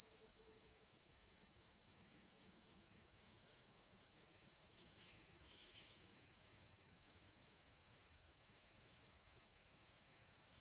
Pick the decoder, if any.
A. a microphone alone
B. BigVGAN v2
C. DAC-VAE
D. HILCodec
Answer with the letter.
C